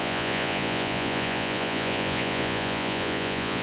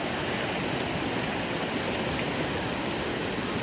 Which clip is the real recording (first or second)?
second